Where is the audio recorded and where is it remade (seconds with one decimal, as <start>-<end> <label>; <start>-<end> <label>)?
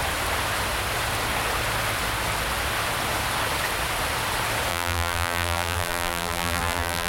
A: 0.0-4.7 recorded; 4.7-7.1 remade